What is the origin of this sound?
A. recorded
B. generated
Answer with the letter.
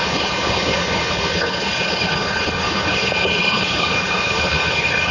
B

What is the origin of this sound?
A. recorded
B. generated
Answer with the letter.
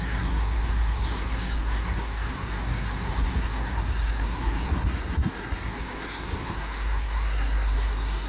B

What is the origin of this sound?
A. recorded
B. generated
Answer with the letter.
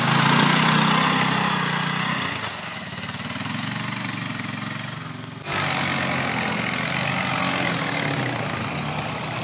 A